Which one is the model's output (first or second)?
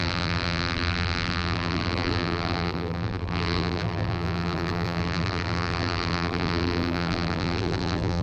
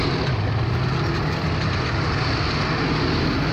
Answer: first